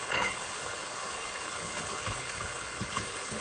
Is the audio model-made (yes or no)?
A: yes